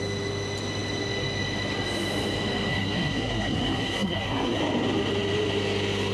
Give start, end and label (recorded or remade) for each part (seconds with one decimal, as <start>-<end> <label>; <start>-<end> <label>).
0.0-2.7 recorded; 2.7-4.6 remade; 4.6-6.1 recorded